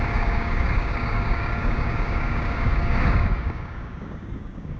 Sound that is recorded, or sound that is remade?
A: remade